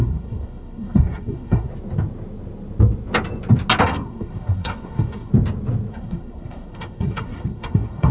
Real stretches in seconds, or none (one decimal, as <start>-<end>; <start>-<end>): 1.7-3.8; 5.3-5.9